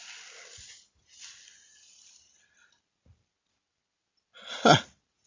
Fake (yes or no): no